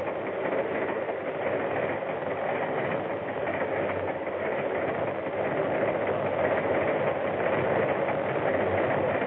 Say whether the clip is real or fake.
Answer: real